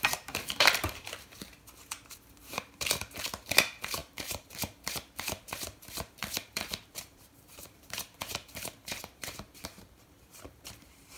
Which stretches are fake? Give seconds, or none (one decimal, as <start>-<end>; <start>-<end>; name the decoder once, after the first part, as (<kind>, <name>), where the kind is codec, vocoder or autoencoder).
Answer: 0.0-11.2 (vocoder, BigVGAN v2)

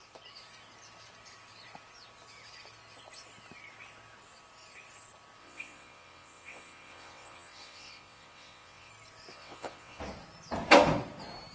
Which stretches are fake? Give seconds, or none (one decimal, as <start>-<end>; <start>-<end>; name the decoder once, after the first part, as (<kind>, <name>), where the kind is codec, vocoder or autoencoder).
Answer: 5.4-8.9 (vocoder, WaveNeXt); 9.3-10.0

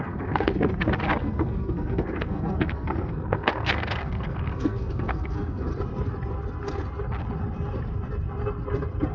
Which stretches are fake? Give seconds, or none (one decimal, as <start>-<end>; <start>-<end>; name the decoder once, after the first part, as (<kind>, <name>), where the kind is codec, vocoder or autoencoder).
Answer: 0.0-0.5 (codec, SNAC); 1.2-5.7

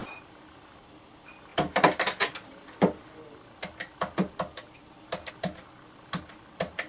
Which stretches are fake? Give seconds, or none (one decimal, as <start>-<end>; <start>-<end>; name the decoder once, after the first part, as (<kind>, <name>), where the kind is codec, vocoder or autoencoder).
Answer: none

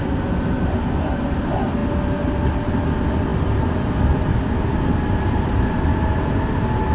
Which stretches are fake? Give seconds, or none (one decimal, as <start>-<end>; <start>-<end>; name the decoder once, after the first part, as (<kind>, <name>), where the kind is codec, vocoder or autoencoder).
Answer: none

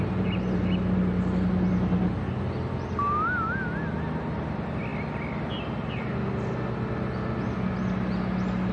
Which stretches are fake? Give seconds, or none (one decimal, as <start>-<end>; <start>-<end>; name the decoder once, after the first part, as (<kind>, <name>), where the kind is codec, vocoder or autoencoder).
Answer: none